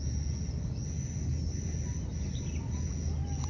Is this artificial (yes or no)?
no